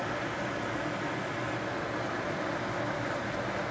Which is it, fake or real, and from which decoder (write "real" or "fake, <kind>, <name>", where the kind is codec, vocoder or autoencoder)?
real